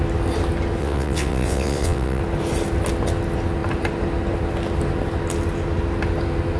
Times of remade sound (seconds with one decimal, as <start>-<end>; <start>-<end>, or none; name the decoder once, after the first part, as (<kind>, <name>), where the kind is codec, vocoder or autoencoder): 0.8-2.2 (vocoder, WaveNeXt)